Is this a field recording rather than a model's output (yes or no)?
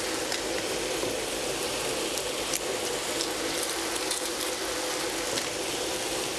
yes